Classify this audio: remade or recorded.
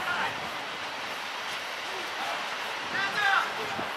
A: recorded